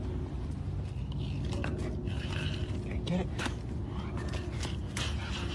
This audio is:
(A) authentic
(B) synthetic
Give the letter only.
A